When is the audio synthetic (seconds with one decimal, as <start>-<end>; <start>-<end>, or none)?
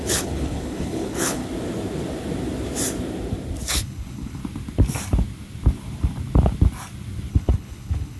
0.0-1.4; 3.7-4.4; 7.3-8.2